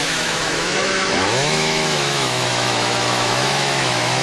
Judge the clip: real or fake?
fake